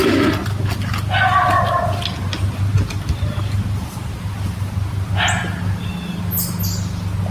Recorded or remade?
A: recorded